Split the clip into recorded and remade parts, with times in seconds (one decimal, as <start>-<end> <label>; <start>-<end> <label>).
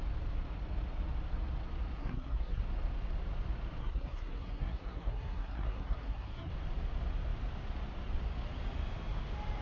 0.0-2.0 recorded; 2.0-2.6 remade; 2.6-3.8 recorded; 3.8-6.5 remade; 6.5-9.6 recorded